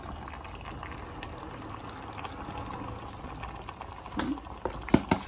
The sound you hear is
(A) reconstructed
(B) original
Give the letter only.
B